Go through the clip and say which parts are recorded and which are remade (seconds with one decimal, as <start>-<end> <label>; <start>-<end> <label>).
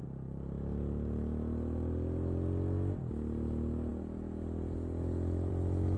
0.0-6.0 recorded